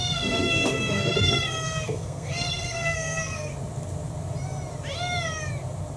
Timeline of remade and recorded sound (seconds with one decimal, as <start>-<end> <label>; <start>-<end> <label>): 0.0-3.5 remade; 3.5-6.0 recorded